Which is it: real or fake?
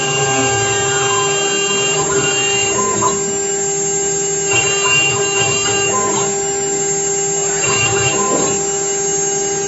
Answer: real